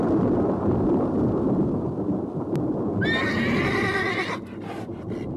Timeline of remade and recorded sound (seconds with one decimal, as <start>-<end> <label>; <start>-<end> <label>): 0.0-5.4 recorded